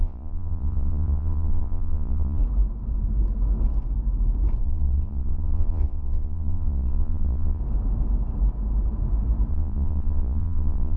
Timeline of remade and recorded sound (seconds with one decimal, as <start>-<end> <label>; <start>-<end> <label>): 0.0-2.4 remade; 2.4-4.6 recorded; 4.6-7.6 remade; 7.6-9.5 recorded; 9.5-11.0 remade